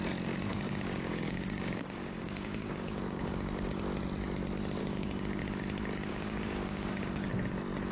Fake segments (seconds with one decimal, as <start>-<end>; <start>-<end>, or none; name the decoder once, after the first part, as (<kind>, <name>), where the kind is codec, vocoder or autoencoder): 0.5-3.8 (codec, DAC); 4.8-5.4; 6.1-7.3